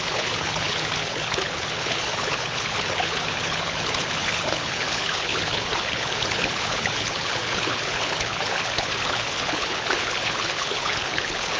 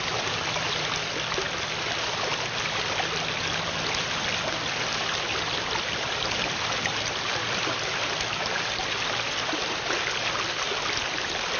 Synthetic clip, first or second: first